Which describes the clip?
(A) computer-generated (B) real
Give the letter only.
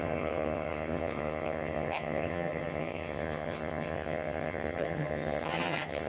A